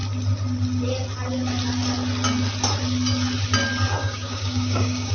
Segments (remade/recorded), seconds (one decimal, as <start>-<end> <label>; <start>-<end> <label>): 0.0-4.0 recorded; 4.0-5.1 remade